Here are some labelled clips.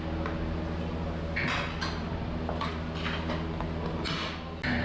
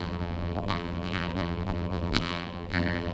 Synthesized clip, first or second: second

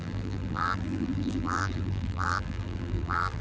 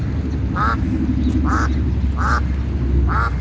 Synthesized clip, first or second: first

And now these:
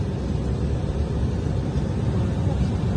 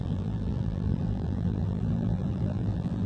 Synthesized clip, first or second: second